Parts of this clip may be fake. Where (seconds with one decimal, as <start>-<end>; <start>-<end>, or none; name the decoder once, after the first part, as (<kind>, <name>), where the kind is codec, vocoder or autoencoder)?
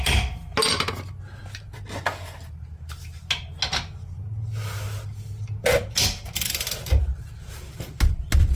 none